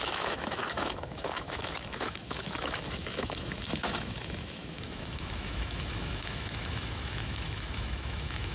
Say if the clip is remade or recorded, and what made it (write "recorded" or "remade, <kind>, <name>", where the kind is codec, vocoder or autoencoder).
remade, autoencoder, DAC-VAE